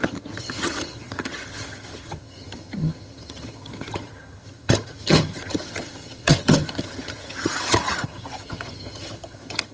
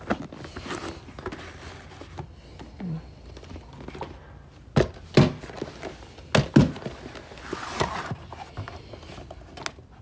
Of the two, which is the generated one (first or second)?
first